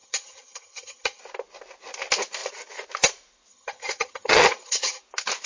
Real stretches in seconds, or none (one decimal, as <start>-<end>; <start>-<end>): 1.2-3.5; 5.0-5.5